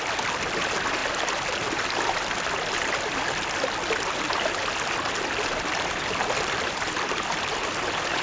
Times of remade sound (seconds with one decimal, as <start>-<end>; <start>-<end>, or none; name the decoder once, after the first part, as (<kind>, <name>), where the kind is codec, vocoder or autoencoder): none